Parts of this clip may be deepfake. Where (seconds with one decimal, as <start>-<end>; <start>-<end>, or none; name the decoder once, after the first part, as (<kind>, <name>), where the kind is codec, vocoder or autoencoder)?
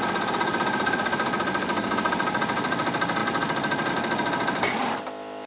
1.7-2.4 (codec, DAC)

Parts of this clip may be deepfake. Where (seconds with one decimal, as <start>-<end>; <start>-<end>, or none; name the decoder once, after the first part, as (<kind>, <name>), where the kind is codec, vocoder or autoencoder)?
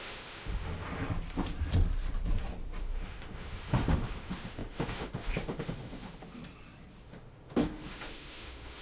0.0-0.7 (autoencoder, DAC-VAE); 2.8-6.4; 7.0-8.8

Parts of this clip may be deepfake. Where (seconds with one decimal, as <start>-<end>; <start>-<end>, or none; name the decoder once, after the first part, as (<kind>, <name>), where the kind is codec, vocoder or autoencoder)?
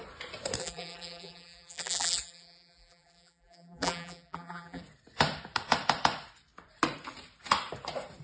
0.6-4.8 (vocoder, BigVGAN v2)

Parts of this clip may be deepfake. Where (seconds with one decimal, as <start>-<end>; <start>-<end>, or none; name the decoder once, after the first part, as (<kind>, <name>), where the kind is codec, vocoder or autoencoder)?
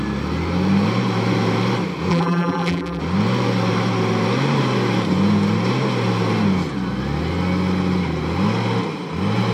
2.1-3.0 (vocoder, BigVGAN v2)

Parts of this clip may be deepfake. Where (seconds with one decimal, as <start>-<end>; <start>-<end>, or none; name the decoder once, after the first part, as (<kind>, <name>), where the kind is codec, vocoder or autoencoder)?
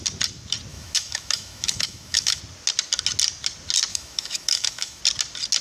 0.7-2.4 (autoencoder, DAC-VAE); 3.9-5.0